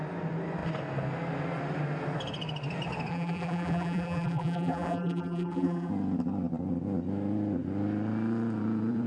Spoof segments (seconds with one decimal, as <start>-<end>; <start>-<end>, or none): 3.1-5.9